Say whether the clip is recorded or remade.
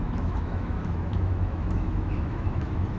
remade